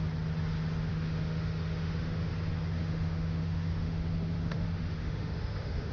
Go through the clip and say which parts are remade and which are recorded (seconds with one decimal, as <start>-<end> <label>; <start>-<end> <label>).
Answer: 0.0-0.9 recorded; 0.9-2.3 remade; 2.3-2.8 recorded; 2.8-5.9 remade